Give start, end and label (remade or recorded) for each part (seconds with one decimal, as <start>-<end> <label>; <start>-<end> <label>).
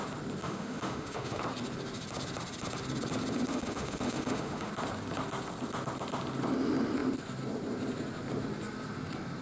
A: 0.0-0.4 recorded; 0.4-1.4 remade; 1.4-3.5 recorded; 3.5-4.7 remade; 4.7-9.4 recorded